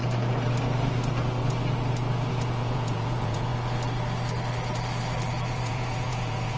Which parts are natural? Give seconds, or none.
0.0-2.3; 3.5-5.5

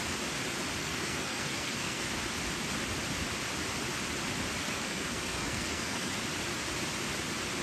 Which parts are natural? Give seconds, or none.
0.0-0.8; 2.1-4.6; 6.1-7.6

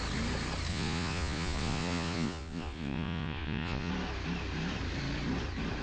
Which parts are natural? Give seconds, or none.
0.0-0.7; 3.9-5.8

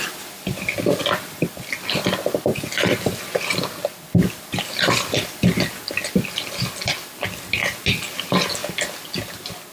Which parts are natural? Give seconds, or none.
0.0-9.7

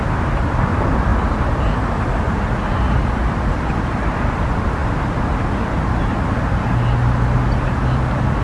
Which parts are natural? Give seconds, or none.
0.0-8.4

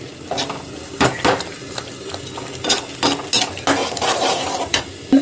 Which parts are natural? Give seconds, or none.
0.0-3.8; 4.8-5.2